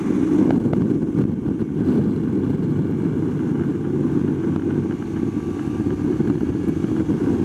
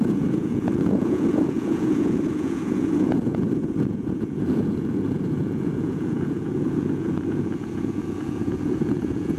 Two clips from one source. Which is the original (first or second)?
first